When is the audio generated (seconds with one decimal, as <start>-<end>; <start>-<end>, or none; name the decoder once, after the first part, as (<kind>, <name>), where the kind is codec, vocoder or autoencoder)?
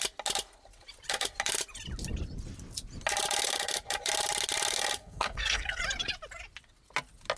5.0-5.8 (codec, SNAC)